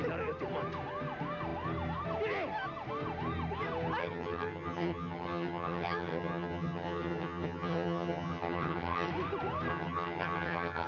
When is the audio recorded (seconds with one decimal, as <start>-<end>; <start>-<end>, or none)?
0.0-4.0; 9.1-9.7